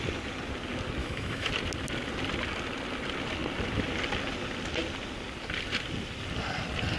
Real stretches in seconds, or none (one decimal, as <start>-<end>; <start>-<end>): 0.0-1.0; 1.5-7.0